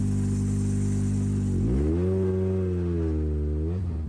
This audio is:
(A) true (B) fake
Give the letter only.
A